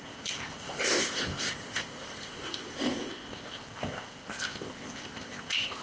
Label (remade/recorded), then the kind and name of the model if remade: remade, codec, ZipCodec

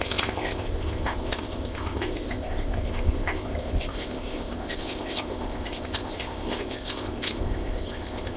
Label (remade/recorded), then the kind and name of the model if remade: remade, codec, ZipCodec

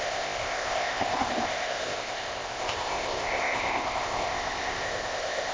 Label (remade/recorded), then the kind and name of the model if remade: remade, codec, ZipCodec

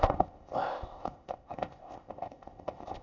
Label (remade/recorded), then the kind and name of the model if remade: remade, codec, ZipCodec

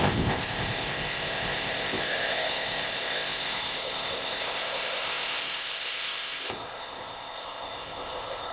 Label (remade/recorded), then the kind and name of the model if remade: remade, codec, ZipCodec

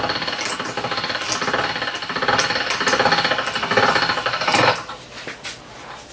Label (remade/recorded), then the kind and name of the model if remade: recorded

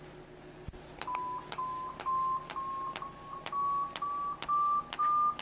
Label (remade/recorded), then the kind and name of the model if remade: recorded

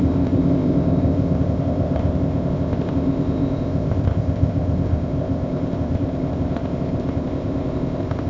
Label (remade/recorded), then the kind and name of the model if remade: remade, codec, ZipCodec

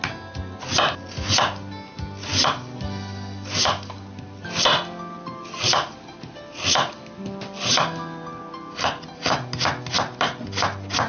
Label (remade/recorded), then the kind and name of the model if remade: recorded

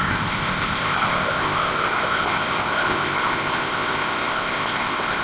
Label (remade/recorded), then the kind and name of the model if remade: remade, codec, ZipCodec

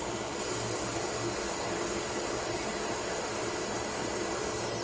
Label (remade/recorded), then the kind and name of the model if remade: recorded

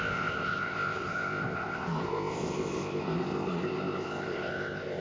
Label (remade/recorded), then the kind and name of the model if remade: remade, codec, ZipCodec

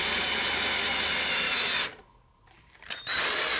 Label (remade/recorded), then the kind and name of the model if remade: recorded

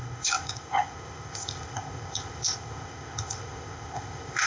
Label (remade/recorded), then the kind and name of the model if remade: remade, codec, ZipCodec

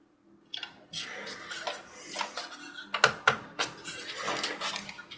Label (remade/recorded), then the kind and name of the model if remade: recorded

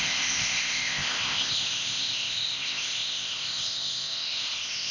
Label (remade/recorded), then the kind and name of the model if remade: remade, codec, ZipCodec